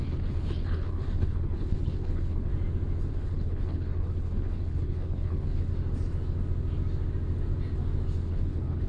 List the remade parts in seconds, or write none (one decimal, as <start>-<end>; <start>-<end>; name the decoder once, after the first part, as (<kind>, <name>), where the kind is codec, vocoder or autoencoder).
0.0-2.5 (codec, HILCodec); 3.1-5.7; 8.3-8.9